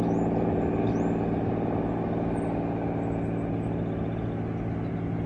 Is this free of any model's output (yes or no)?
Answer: yes